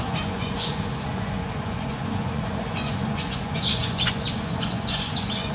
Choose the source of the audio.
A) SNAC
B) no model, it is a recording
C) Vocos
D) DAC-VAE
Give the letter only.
C